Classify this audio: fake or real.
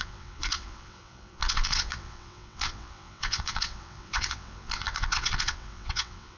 fake